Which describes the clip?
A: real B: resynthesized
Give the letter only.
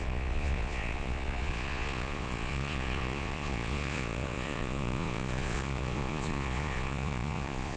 B